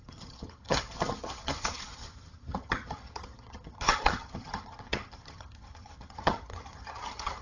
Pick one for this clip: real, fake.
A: fake